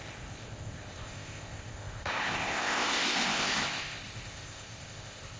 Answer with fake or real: fake